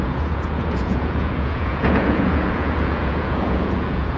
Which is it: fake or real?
fake